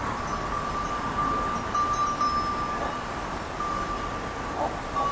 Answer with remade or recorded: recorded